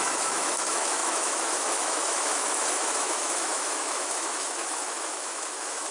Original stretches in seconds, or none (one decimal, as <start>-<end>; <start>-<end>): none